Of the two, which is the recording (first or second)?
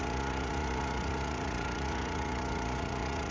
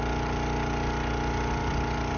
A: second